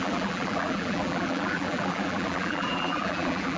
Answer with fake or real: fake